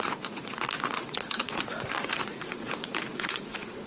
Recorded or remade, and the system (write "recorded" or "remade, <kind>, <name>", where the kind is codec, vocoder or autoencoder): remade, vocoder, Vocos